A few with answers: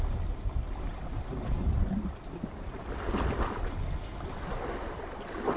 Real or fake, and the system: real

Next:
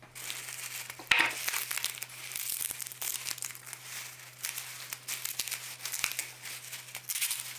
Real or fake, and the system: real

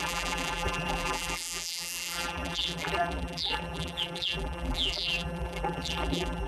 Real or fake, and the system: fake, vocoder, BigVGAN v2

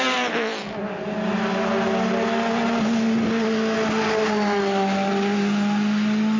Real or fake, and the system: real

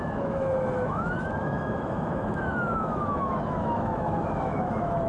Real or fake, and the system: fake, autoencoder, DAC-VAE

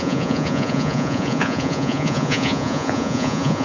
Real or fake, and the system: fake, vocoder, Vocos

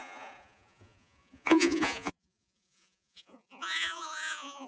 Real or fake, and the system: fake, vocoder, Vocos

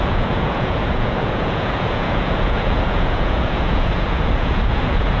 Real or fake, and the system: fake, vocoder, Vocos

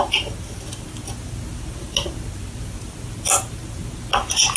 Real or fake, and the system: real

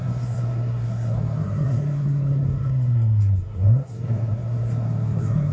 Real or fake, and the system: fake, codec, SNAC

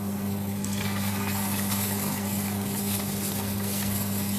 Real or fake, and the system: fake, codec, SNAC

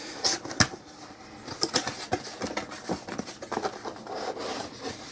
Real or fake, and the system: real